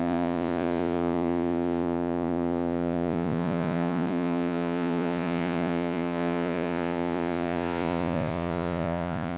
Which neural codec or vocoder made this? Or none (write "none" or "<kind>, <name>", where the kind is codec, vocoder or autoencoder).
vocoder, Vocos